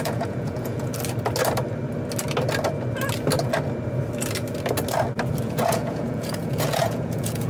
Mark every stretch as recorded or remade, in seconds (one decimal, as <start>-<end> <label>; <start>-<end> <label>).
0.0-0.9 remade; 0.9-5.4 recorded; 5.4-7.5 remade